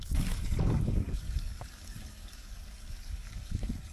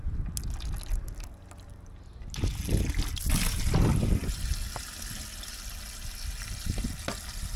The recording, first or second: second